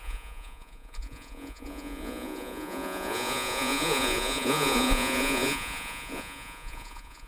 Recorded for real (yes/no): no